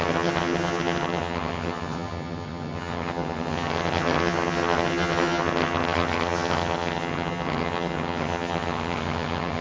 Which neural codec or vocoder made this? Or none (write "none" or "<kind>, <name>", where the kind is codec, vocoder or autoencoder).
vocoder, HiFi-GAN